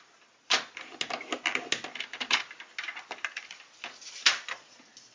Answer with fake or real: real